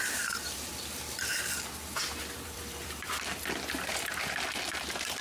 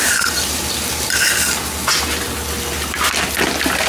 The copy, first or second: first